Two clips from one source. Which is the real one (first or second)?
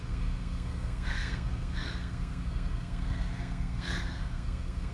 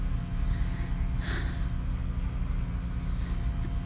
second